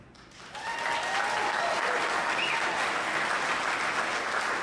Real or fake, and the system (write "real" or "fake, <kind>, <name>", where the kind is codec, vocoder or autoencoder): real